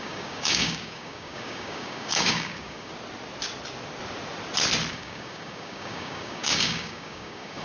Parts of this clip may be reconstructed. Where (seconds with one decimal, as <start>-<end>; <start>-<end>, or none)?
0.0-2.9; 4.9-7.6